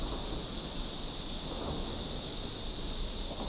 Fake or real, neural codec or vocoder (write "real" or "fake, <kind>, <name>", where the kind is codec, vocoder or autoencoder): real